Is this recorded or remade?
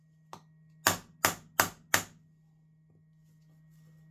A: recorded